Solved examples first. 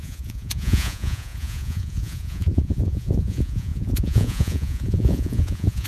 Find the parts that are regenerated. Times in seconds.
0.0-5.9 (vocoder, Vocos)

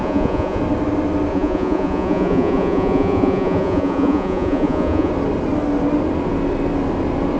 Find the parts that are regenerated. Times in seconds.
0.0-0.6 (vocoder, Vocos); 1.3-5.1

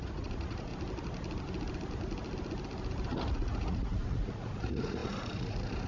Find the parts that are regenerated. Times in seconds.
0.0-0.7 (vocoder, Vocos); 3.2-5.9

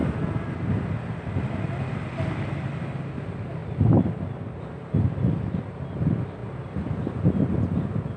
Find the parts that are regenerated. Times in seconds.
none

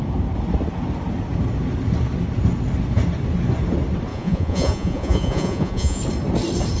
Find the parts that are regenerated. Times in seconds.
4.1-6.0 (vocoder, Vocos)

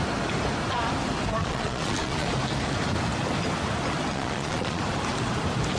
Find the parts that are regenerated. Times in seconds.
1.4-2.3 (vocoder, Vocos); 4.1-4.8

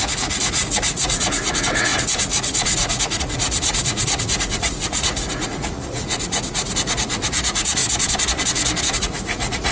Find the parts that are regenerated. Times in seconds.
0.0-7.8 (vocoder, Vocos); 8.8-9.7

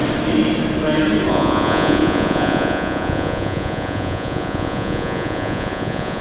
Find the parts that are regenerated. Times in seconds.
1.3-6.2 (vocoder, Vocos)